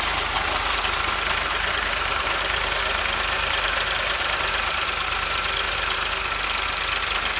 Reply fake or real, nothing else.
real